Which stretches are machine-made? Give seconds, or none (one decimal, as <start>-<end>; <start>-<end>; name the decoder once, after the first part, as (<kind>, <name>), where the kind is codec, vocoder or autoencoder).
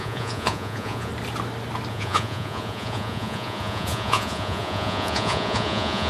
0.0-1.1 (vocoder, Vocos); 1.9-6.1